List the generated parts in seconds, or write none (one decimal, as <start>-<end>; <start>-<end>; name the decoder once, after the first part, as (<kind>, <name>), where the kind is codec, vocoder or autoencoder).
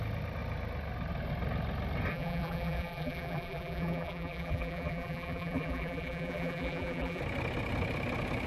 2.1-7.2 (vocoder, BigVGAN v2)